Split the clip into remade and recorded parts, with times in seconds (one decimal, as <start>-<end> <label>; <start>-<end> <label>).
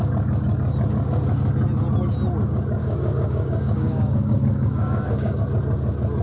0.0-2.8 recorded; 2.8-5.4 remade; 5.4-6.2 recorded